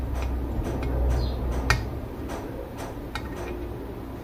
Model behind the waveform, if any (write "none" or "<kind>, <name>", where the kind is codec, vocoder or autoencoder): none